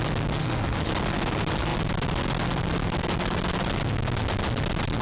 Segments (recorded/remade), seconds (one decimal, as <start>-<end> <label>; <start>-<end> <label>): 0.0-0.4 recorded; 0.4-0.9 remade; 0.9-5.0 recorded